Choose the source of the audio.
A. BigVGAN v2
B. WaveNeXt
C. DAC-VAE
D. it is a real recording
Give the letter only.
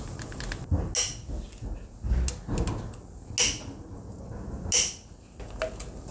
D